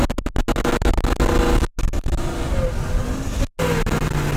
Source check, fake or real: real